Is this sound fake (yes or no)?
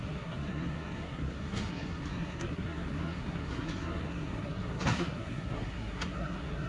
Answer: yes